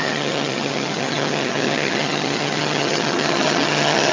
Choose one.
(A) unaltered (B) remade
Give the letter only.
B